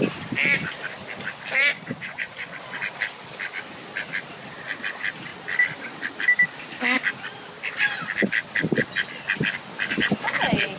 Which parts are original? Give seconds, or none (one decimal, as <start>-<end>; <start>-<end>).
0.0-1.7; 2.6-10.8